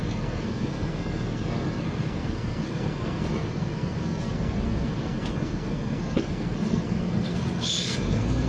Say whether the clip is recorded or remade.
remade